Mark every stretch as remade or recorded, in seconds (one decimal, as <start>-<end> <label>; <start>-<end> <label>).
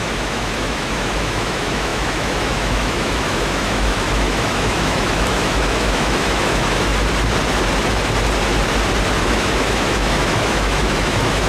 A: 0.0-6.9 remade; 6.9-9.1 recorded; 9.1-11.5 remade